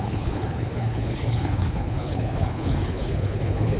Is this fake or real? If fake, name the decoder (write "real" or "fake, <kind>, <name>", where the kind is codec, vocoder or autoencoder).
fake, codec, HILCodec